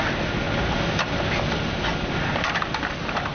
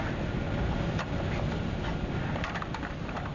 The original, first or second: first